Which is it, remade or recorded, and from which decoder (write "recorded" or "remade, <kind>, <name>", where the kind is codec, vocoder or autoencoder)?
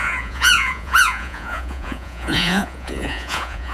remade, vocoder, Vocos